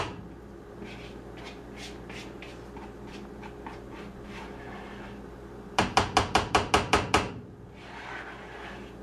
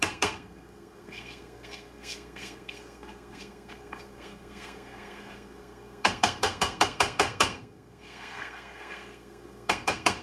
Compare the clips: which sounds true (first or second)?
first